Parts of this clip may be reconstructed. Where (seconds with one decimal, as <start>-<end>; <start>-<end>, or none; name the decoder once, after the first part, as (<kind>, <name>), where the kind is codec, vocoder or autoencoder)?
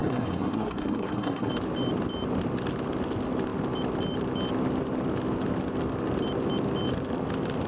0.0-1.5 (codec, SNAC)